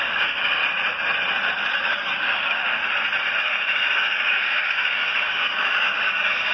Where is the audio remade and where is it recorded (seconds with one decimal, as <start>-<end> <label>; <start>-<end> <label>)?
0.0-0.6 remade; 0.6-1.8 recorded; 1.8-2.8 remade; 2.8-3.4 recorded; 3.4-6.5 remade